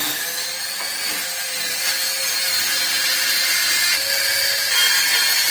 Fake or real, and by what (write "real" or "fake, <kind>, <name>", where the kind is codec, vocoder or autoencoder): real